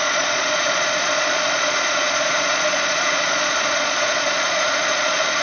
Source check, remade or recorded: remade